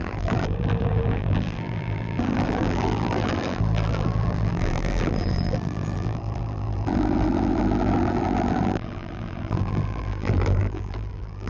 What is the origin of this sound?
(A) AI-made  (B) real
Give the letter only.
A